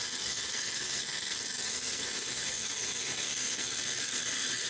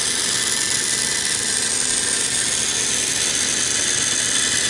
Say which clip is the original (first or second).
second